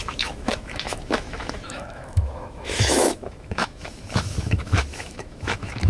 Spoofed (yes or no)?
yes